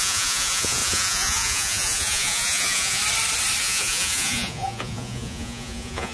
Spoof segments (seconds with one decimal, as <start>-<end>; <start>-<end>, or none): 0.0-3.0; 3.6-6.1